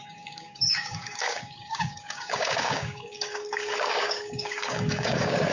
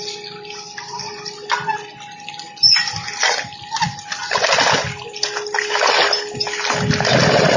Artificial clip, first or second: first